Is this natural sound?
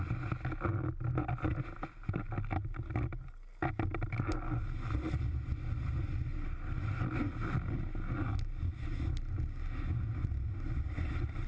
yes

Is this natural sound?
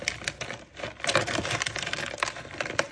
yes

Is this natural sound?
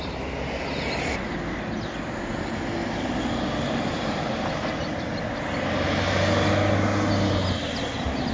yes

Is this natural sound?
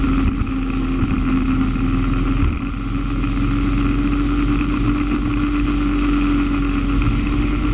yes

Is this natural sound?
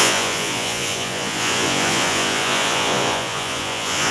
no